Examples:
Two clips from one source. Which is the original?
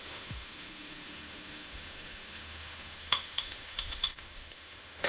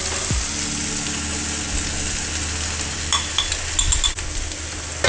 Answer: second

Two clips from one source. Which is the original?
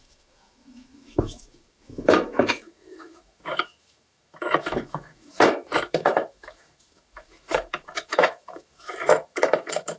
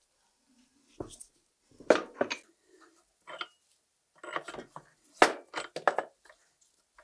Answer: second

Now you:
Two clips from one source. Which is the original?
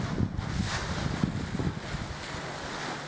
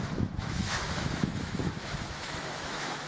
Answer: first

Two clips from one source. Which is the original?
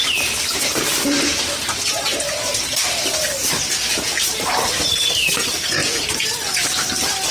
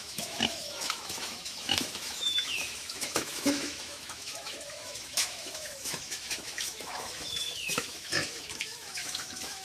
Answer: first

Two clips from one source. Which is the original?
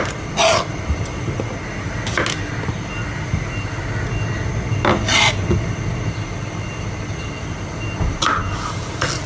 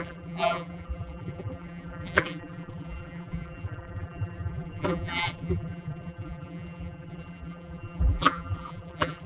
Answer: first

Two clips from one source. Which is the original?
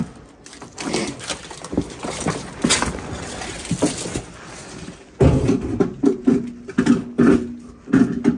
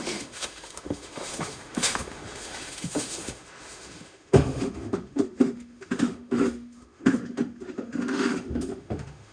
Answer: first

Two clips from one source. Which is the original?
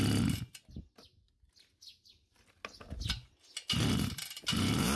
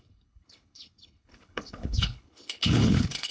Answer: first